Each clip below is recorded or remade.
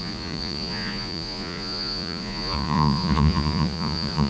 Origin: remade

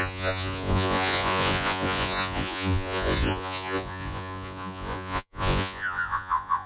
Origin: remade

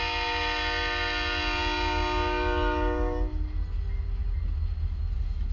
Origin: recorded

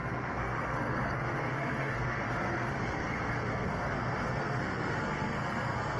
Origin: remade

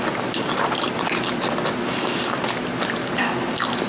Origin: recorded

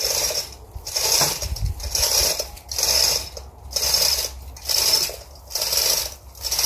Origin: recorded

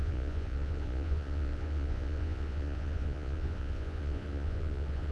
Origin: remade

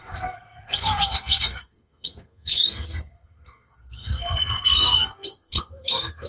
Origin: remade